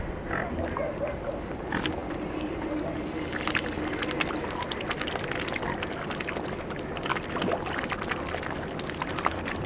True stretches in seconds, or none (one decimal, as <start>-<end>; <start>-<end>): 0.0-9.7